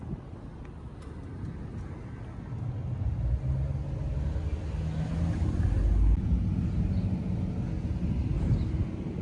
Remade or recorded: recorded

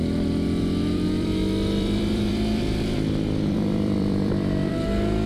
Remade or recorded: remade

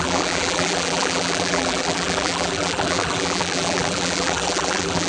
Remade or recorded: remade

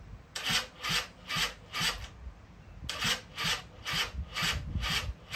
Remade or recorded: recorded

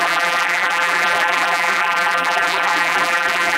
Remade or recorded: remade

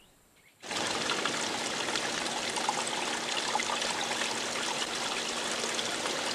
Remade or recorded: recorded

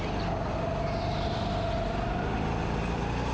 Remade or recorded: recorded